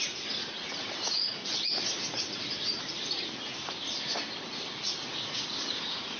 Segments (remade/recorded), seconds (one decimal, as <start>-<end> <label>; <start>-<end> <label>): 0.0-1.4 remade; 1.4-5.1 recorded; 5.1-6.2 remade